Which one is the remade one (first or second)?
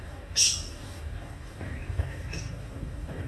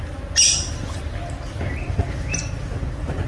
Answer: first